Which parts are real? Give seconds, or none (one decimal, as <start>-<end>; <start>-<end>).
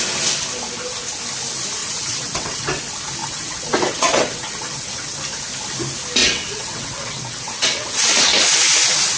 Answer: 0.0-1.8; 2.8-3.2; 5.2-6.2; 8.1-9.2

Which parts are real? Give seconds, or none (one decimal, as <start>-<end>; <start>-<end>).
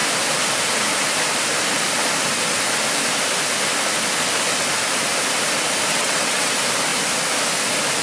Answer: 0.0-5.9; 6.5-8.0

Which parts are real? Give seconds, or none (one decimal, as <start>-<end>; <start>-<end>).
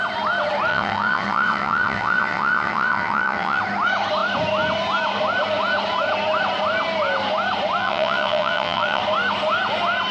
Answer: 0.0-0.7; 3.6-7.8; 9.0-10.1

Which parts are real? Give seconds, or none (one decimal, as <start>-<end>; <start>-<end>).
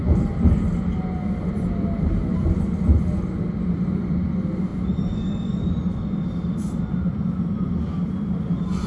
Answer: 0.0-8.9